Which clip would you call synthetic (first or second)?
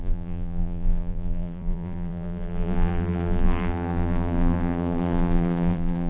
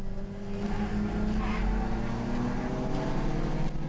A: first